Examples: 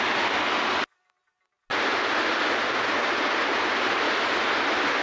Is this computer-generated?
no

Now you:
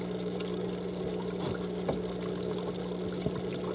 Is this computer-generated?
no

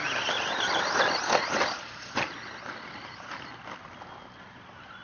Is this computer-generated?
no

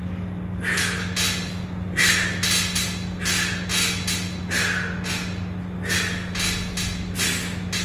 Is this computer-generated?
no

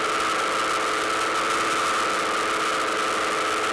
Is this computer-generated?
no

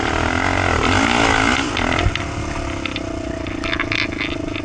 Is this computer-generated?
no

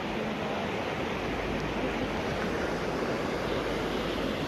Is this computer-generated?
no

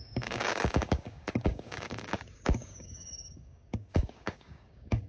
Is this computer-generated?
yes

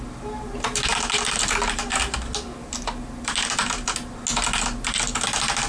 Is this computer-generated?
no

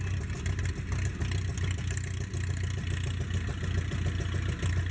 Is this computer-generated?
no